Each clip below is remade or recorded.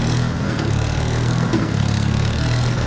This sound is remade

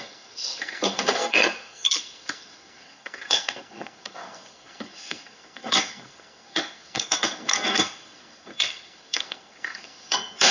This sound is remade